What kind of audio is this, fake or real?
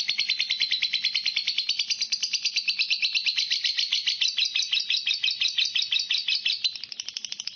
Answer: real